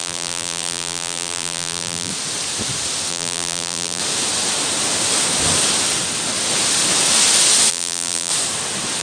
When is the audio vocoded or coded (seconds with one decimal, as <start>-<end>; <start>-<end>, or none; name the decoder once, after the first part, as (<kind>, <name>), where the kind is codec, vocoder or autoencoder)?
0.0-2.1 (vocoder, BigVGAN v2); 3.1-4.0; 7.7-8.3